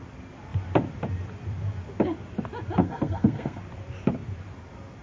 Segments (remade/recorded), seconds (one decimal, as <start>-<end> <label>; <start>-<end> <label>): 0.0-2.8 recorded; 2.8-3.6 remade; 3.6-5.0 recorded